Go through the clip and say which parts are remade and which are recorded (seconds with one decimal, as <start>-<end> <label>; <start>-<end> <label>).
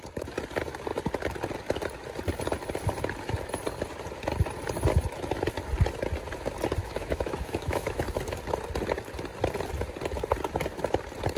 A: 0.0-6.8 recorded; 6.8-8.0 remade; 8.0-11.4 recorded